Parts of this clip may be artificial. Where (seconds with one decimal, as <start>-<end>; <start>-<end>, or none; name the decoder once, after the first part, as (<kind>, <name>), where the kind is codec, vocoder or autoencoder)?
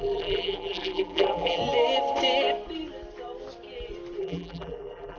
0.0-1.6 (vocoder, BigVGAN v2); 4.2-5.2